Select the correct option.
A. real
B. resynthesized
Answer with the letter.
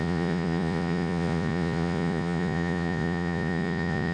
B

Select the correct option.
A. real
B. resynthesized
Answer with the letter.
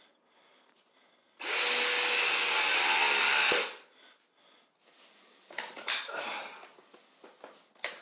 A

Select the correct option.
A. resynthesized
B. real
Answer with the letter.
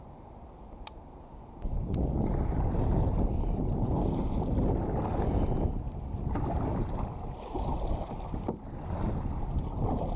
B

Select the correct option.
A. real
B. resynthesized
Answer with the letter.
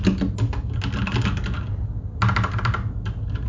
A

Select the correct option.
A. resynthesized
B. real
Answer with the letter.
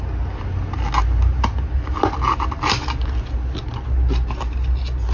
B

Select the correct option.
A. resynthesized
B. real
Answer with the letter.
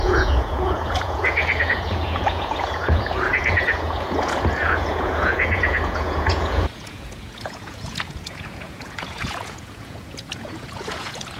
A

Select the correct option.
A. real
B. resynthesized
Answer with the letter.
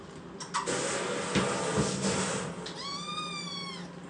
A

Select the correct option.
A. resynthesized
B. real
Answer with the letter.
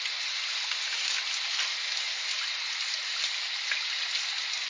B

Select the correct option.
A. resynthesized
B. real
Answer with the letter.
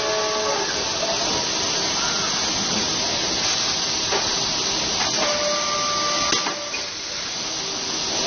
B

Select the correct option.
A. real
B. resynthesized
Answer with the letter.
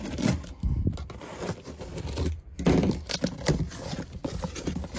A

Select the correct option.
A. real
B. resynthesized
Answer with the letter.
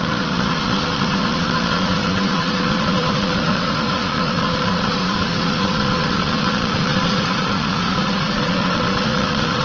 B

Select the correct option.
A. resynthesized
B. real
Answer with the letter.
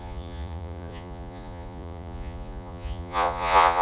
A